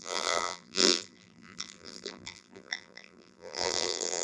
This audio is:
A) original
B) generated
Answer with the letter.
B